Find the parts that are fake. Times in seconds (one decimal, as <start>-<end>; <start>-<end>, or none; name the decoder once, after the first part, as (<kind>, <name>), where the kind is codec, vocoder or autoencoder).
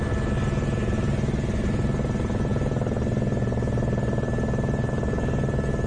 none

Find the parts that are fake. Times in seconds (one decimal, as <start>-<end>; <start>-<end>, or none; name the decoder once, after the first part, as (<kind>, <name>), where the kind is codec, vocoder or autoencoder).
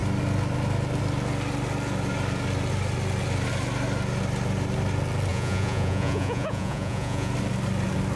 5.3-7.3 (vocoder, Vocos)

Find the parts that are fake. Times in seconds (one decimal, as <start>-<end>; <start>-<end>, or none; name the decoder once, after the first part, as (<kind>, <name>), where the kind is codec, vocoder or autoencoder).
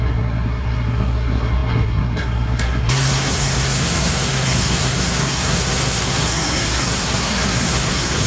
0.0-8.3 (codec, SNAC)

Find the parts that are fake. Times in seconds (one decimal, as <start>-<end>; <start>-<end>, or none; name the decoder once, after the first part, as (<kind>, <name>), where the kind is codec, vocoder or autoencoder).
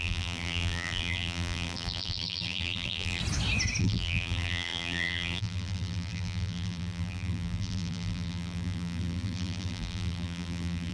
0.0-3.2 (vocoder, BigVGAN v2); 3.8-10.9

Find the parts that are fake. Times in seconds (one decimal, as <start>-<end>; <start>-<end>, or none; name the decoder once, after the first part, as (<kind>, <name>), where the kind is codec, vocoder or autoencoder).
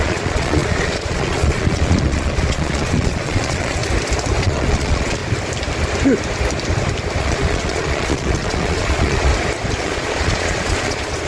0.0-3.8 (vocoder, Vocos); 4.4-5.2; 7.2-9.3; 9.8-11.3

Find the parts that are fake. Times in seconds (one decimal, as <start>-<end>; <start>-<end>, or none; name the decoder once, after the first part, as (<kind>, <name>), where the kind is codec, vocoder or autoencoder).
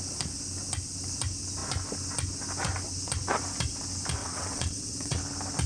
4.2-5.2 (vocoder, WaveNeXt)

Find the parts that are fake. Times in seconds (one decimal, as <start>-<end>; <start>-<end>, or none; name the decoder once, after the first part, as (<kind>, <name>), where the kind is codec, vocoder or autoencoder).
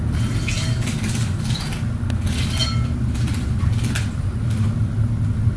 none